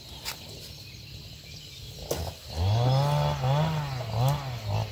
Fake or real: real